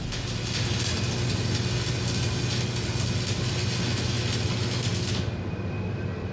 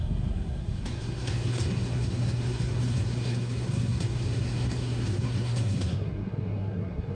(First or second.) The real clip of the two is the first